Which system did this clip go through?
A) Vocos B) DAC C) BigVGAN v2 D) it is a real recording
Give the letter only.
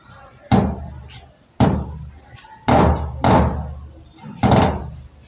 D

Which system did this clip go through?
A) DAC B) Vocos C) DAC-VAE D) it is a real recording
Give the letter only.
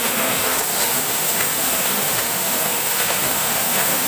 C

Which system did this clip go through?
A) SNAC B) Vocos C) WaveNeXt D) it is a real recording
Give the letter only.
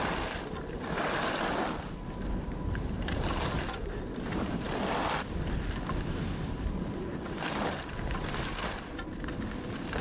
D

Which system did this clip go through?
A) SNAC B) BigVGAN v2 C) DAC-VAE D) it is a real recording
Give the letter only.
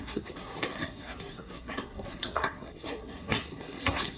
A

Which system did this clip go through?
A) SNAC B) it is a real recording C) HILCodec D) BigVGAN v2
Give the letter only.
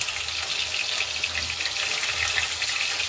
B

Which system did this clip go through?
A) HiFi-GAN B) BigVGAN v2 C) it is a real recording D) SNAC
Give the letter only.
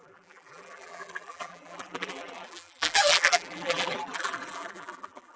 B